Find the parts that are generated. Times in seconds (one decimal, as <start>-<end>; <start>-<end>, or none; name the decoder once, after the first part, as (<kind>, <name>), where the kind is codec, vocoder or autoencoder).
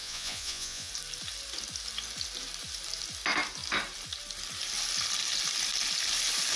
0.0-0.9 (vocoder, Vocos)